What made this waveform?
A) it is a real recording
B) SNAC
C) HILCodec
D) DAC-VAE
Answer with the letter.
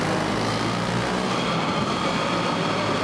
A